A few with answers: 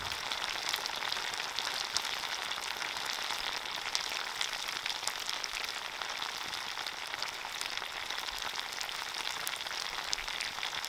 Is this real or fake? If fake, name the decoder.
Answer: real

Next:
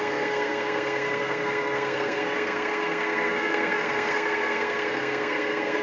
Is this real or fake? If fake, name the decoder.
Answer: fake, codec, SNAC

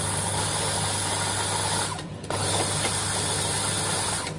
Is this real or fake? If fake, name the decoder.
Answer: real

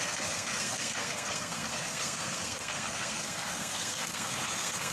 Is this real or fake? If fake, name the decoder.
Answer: fake, codec, SNAC